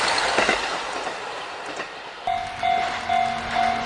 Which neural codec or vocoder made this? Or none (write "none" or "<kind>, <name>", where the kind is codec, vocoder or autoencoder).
none